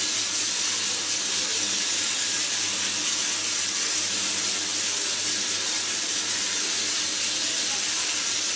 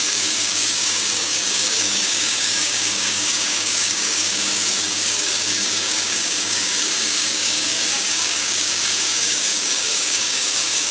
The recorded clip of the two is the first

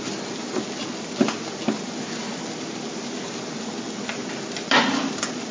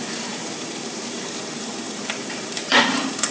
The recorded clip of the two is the first